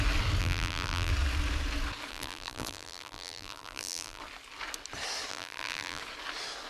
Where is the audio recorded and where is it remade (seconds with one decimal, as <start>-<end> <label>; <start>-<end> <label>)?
0.0-0.4 recorded; 0.4-1.1 remade; 1.1-2.1 recorded; 2.1-4.2 remade; 4.2-5.3 recorded; 5.3-6.0 remade; 6.0-6.7 recorded